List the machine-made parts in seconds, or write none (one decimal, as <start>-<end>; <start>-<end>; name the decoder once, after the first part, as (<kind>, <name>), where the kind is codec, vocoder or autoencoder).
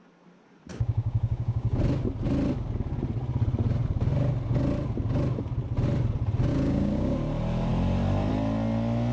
0.7-1.8 (codec, DAC); 6.5-7.2